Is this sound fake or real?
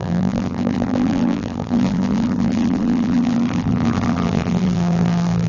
fake